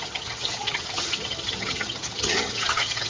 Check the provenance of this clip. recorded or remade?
remade